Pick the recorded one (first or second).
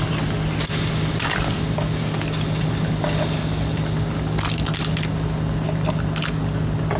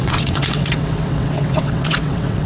first